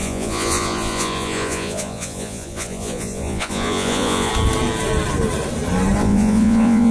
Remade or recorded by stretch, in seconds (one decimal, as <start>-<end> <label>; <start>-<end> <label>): 0.0-4.3 remade; 4.3-6.0 recorded; 6.0-6.9 remade